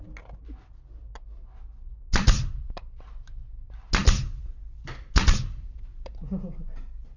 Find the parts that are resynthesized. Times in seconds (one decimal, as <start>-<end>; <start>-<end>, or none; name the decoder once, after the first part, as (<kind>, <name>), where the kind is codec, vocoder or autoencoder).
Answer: none